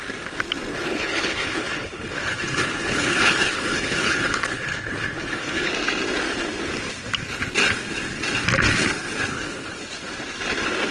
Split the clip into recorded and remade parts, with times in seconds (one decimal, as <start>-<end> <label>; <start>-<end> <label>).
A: 0.0-0.7 recorded; 0.7-5.7 remade; 5.7-9.3 recorded; 9.3-9.8 remade; 9.8-10.9 recorded